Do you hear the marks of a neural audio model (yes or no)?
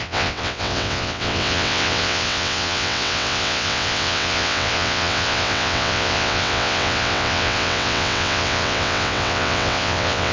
yes